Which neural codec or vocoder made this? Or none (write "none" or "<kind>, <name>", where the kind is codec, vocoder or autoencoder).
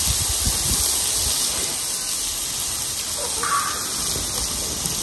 none